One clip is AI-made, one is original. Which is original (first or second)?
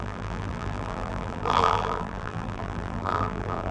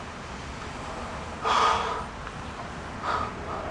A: second